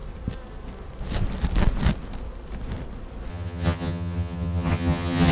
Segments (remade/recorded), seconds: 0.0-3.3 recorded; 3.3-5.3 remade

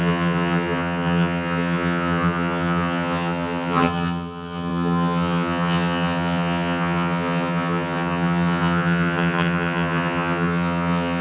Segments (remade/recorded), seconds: 0.0-11.2 remade

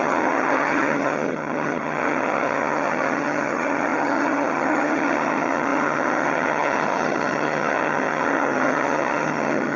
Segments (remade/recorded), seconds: 0.0-9.8 remade